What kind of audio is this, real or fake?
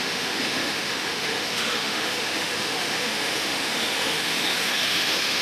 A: fake